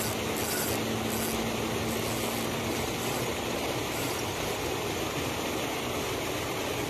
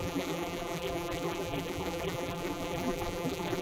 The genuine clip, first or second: first